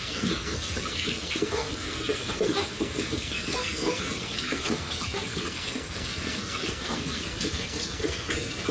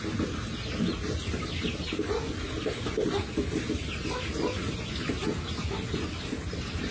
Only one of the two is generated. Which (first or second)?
first